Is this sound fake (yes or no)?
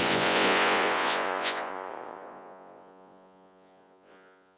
yes